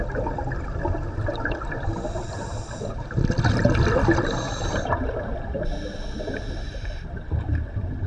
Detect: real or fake fake